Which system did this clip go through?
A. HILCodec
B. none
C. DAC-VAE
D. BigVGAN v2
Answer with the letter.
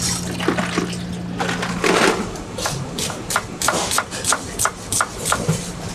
B